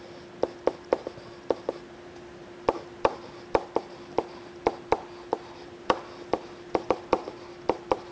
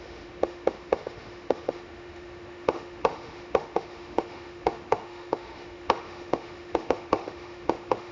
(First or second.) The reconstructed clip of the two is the second